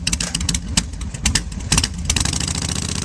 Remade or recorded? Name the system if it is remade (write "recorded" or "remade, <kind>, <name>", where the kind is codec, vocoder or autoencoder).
recorded